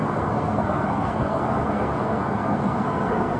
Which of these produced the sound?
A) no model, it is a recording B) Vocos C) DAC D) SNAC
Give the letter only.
D